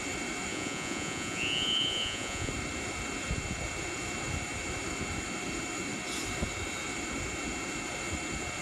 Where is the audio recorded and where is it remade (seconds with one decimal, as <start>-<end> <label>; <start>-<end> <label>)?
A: 0.0-0.5 recorded; 0.5-2.5 remade; 2.5-8.6 recorded